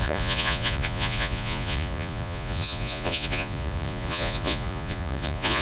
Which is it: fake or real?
fake